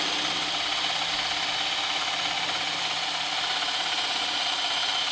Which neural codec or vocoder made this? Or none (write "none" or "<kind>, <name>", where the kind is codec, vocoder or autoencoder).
none